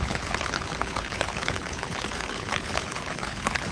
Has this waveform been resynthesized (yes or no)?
yes